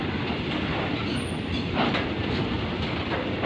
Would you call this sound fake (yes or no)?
no